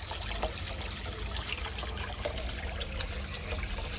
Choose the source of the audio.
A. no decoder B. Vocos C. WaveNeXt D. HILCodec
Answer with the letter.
A